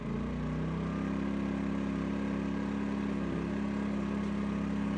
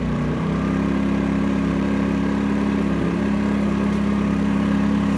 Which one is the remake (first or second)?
second